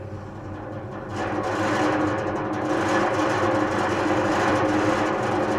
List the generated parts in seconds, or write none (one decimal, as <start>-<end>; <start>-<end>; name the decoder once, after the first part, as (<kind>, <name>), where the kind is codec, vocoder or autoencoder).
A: none